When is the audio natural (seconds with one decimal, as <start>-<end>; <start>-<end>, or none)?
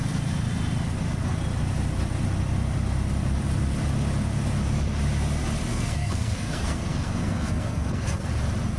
0.0-5.7; 8.3-8.8